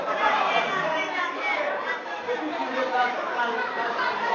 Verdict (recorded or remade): remade